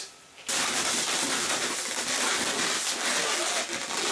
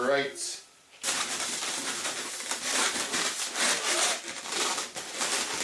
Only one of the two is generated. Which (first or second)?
second